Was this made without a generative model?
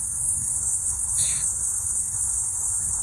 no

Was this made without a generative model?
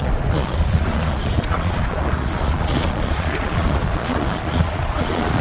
no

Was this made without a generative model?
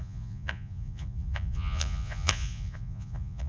no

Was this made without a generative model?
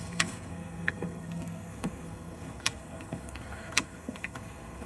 no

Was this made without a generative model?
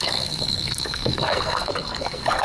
no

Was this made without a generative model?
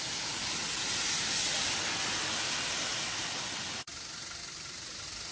yes